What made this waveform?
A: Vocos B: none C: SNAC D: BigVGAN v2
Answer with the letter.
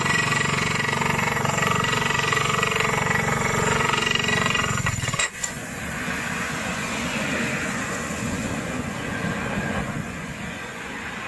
A